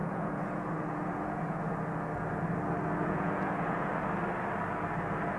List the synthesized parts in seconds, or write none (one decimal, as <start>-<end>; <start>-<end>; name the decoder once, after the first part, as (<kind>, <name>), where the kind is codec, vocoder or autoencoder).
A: 0.0-1.6 (vocoder, Vocos); 3.0-3.9